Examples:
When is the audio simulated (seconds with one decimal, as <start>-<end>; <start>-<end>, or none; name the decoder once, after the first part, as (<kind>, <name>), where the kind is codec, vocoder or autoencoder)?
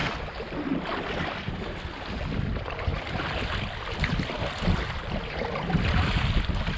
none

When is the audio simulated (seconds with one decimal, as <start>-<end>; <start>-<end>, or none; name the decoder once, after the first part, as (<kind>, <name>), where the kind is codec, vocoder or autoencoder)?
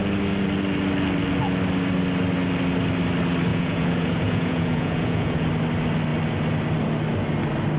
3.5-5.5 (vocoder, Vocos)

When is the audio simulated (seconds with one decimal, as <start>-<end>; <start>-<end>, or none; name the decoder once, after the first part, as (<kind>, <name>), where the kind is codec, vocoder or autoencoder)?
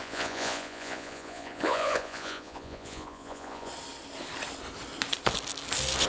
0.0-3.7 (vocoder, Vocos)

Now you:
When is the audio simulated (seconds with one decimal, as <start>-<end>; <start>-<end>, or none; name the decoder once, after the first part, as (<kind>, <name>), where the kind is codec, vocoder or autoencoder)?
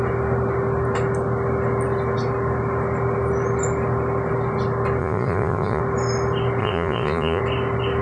5.0-5.8 (vocoder, Vocos); 6.6-7.4